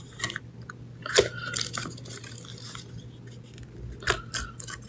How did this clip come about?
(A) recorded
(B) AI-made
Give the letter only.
A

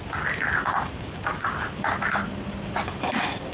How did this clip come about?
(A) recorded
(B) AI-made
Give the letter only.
A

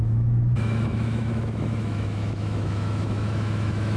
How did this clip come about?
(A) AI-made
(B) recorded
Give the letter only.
A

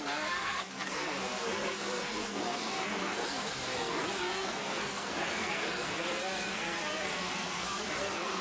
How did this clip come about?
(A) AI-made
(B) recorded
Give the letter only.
A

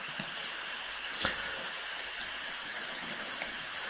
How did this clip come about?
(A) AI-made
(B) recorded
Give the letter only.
B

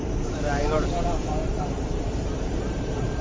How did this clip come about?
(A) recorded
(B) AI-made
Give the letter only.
B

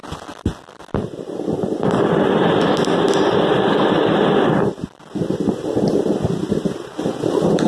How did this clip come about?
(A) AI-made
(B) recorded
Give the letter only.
B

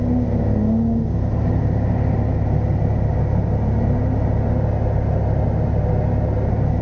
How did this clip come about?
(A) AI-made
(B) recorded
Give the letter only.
B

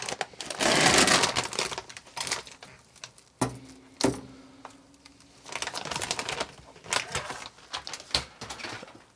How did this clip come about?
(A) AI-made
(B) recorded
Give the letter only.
B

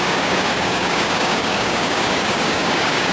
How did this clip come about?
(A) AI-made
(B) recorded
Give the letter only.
A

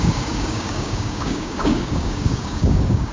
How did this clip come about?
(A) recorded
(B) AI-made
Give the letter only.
B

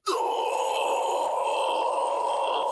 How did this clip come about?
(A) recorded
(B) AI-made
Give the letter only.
A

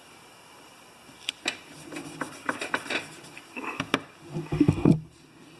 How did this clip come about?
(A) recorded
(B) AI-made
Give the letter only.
A